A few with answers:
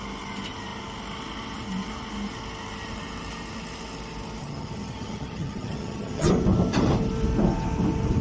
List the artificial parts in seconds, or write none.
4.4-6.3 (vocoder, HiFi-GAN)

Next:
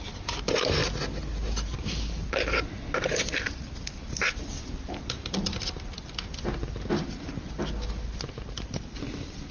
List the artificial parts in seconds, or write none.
none

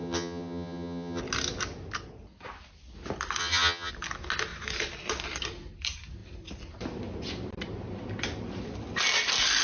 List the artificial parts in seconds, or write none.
0.0-1.2 (vocoder, HiFi-GAN); 3.4-3.9